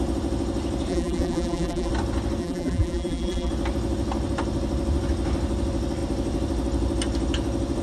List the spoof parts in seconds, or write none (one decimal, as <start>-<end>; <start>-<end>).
0.9-1.9; 2.4-3.5